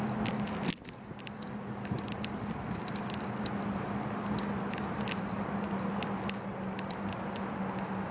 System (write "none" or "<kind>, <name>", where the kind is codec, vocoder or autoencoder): none